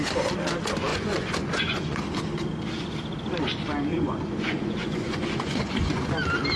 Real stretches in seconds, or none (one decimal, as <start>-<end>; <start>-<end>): 0.0-0.9; 2.0-3.9; 6.1-6.6